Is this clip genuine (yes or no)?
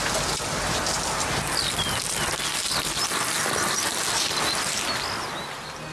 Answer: yes